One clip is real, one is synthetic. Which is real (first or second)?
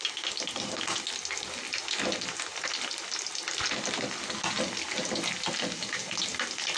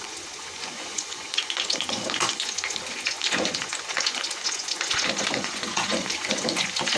first